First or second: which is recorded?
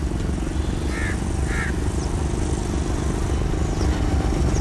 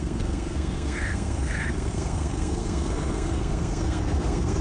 first